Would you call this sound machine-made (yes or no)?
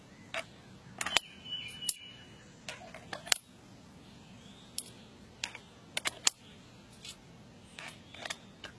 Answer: no